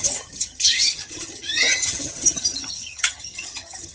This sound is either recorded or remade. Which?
remade